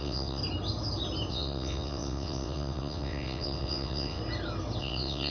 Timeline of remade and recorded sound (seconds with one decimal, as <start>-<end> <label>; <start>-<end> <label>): 0.0-0.4 remade; 0.4-1.3 recorded; 1.3-4.2 remade; 4.2-4.8 recorded; 4.8-5.3 remade

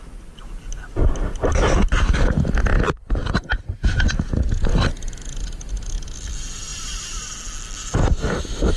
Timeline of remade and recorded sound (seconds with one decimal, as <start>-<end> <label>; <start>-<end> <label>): 0.0-8.8 recorded

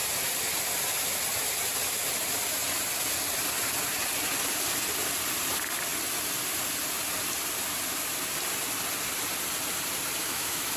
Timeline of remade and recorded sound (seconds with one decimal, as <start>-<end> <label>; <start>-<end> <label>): 0.0-10.2 recorded; 10.2-10.8 remade

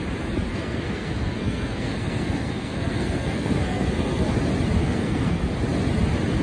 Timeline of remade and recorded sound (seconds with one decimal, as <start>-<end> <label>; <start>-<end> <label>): 0.0-0.5 recorded; 0.5-4.3 remade; 4.3-4.8 recorded; 4.8-5.4 remade; 5.4-6.4 recorded

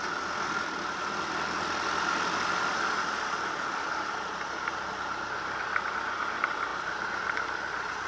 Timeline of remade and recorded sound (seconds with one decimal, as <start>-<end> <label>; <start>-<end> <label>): 0.0-8.1 recorded